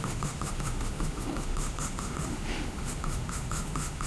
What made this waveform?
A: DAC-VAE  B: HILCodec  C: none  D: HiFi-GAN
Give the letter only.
A